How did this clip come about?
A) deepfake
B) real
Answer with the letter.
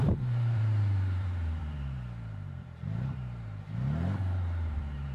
A